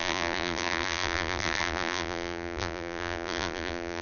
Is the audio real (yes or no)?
no